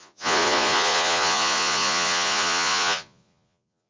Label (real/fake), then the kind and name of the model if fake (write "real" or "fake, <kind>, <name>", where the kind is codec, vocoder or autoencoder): fake, vocoder, Vocos